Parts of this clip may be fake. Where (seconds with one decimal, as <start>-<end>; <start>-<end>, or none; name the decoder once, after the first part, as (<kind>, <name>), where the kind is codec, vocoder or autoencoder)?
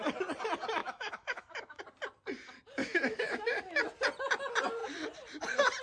0.8-1.8 (autoencoder, DAC-VAE); 2.8-3.8